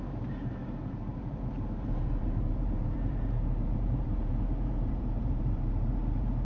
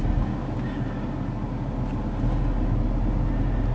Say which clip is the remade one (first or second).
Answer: first